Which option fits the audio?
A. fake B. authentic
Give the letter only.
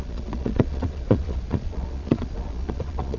A